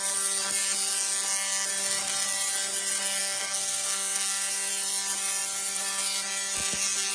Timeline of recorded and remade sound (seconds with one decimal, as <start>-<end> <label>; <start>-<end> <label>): 0.0-3.2 recorded; 3.2-4.7 remade; 4.7-7.1 recorded